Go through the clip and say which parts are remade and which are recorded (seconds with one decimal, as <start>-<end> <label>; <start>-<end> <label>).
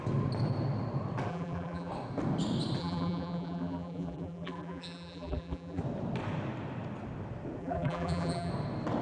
0.0-1.3 recorded; 1.3-1.9 remade; 1.9-2.8 recorded; 2.8-5.8 remade; 5.8-7.6 recorded; 7.6-8.5 remade; 8.5-9.0 recorded